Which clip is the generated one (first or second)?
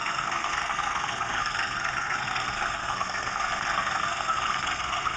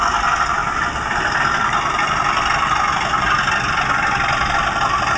first